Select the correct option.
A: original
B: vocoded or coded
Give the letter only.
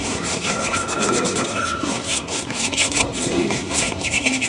B